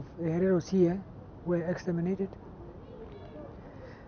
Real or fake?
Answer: real